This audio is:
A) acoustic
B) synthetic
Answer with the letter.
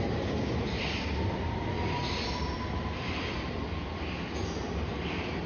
A